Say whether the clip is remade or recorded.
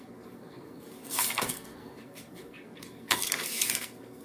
remade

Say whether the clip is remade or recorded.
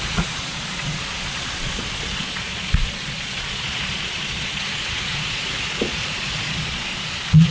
remade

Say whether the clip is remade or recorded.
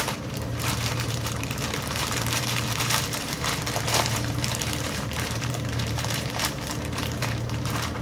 remade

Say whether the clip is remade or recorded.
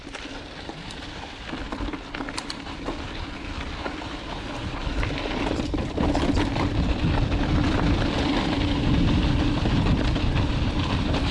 remade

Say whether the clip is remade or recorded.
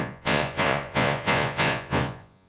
remade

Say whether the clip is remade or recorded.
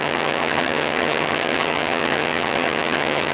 remade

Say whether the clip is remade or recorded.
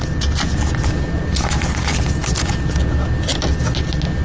recorded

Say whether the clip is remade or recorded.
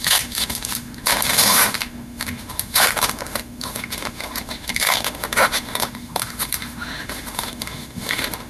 remade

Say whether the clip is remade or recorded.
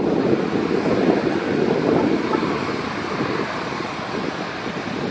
recorded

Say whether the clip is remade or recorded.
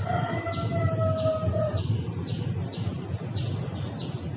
recorded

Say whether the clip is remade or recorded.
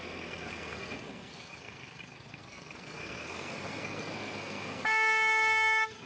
remade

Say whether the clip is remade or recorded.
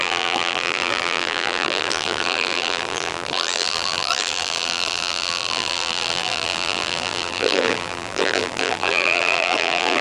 remade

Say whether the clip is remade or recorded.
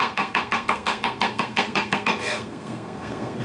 remade